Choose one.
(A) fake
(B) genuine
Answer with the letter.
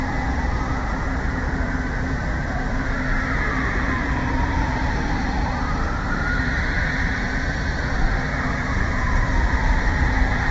A